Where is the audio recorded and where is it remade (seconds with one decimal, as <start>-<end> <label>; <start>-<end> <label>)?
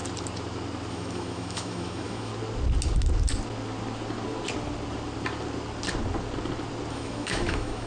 0.0-0.9 recorded; 0.9-2.3 remade; 2.3-6.9 recorded; 6.9-7.9 remade